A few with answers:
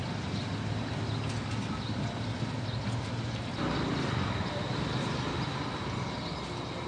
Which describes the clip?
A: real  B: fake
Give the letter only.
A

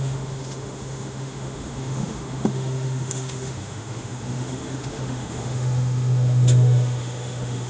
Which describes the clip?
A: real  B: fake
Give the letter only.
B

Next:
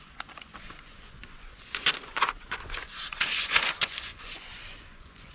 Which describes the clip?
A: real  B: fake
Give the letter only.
B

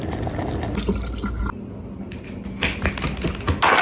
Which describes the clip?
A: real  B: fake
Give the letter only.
A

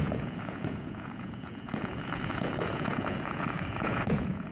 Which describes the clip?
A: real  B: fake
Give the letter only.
B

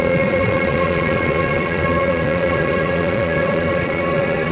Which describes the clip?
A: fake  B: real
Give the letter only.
A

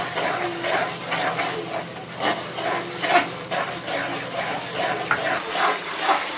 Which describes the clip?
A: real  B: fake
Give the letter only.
A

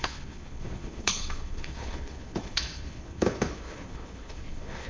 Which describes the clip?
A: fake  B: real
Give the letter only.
A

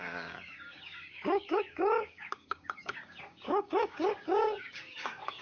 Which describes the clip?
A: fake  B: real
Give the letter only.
A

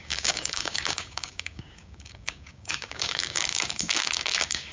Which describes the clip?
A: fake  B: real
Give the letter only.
A